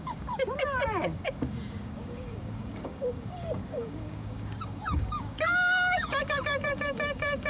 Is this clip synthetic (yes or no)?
yes